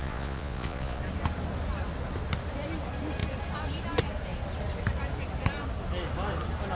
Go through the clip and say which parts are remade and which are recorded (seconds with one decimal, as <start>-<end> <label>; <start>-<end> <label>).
0.0-1.0 remade; 1.0-6.7 recorded